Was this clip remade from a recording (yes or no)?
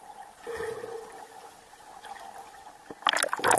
no